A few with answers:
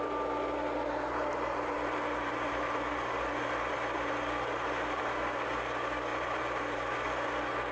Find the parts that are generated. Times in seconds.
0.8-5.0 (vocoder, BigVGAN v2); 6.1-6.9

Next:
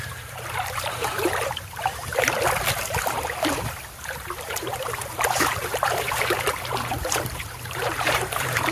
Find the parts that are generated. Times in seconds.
0.0-2.0 (vocoder, BigVGAN v2); 4.0-8.7

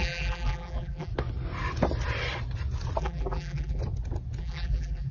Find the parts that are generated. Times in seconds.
0.0-1.1 (vocoder, BigVGAN v2); 3.0-3.8; 4.4-5.1

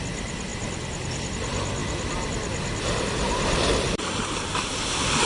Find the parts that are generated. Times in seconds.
0.5-1.3 (vocoder, BigVGAN v2); 1.8-4.7

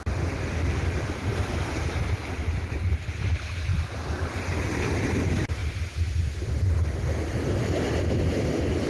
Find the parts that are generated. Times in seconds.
1.3-2.0 (vocoder, BigVGAN v2); 3.7-5.0

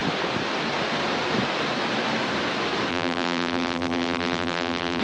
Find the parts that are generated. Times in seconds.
2.9-5.0 (vocoder, BigVGAN v2)

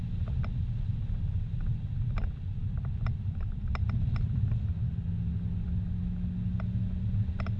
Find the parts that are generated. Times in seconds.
2.6-4.5 (vocoder, BigVGAN v2)